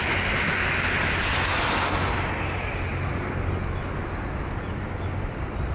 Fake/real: real